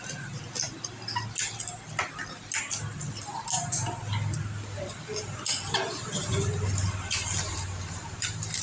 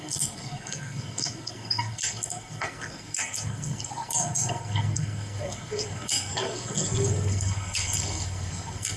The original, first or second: first